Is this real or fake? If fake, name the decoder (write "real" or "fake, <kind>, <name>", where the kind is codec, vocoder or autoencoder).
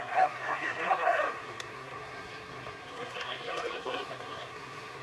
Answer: fake, codec, SNAC